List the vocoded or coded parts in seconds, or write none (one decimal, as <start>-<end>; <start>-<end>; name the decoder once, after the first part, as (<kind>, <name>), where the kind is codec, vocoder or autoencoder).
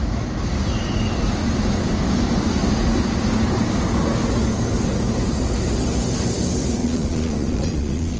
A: 6.8-8.2 (vocoder, Vocos)